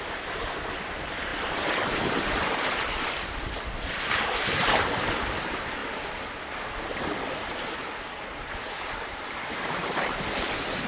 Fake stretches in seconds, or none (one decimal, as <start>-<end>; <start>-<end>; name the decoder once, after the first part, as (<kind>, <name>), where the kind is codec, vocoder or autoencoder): 0.0-5.8 (vocoder, BigVGAN v2); 7.0-10.9